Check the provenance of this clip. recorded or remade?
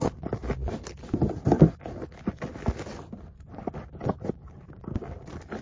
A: recorded